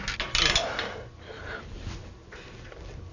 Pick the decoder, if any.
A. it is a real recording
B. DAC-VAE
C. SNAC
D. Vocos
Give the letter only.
A